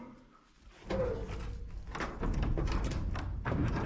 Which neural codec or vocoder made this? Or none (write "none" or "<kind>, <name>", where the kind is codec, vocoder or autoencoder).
none